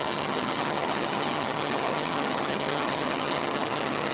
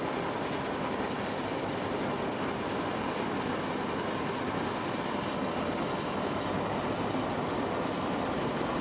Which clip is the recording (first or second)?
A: second